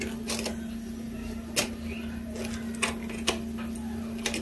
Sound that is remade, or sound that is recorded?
recorded